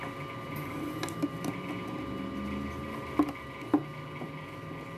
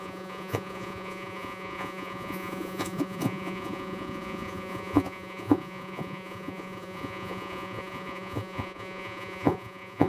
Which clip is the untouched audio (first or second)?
first